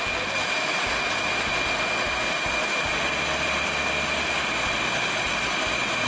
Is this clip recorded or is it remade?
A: recorded